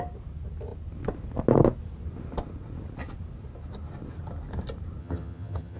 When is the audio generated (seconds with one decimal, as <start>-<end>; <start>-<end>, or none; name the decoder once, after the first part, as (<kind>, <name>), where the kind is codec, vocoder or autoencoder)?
5.0-5.8 (vocoder, HiFi-GAN)